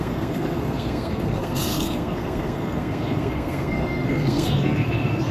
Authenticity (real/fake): fake